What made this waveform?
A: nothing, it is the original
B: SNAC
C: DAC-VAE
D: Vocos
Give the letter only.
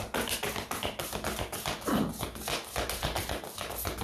A